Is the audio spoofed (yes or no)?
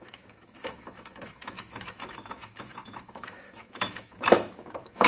yes